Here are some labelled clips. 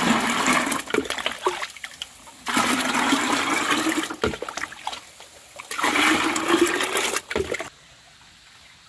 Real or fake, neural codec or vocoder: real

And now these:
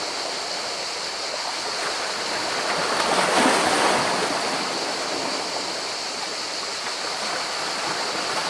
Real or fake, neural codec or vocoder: real